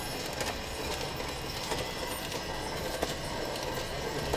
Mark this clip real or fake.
real